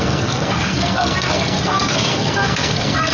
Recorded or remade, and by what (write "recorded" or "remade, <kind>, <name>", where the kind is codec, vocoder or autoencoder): remade, codec, SNAC